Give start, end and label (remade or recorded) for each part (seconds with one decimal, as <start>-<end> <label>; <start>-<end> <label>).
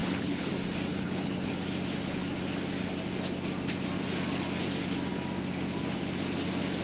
0.0-0.5 remade; 0.5-0.9 recorded; 0.9-1.5 remade; 1.5-6.8 recorded